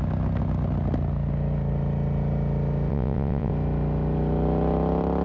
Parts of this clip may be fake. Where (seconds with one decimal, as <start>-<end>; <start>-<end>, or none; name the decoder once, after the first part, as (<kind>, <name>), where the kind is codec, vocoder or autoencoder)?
2.9-3.5 (vocoder, WaveNeXt)